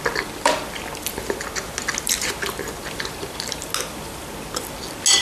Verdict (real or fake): real